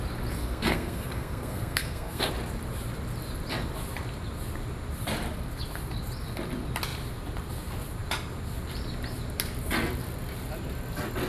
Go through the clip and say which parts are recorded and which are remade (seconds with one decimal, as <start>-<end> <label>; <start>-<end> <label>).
0.0-0.4 recorded; 0.4-2.3 remade; 2.3-11.3 recorded